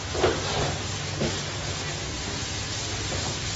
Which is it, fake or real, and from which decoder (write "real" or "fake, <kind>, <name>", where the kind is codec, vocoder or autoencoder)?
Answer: real